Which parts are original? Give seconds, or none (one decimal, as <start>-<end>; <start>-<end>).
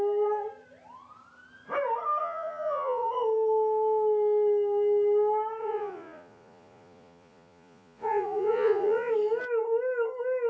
0.0-2.2; 3.1-5.6; 9.1-10.5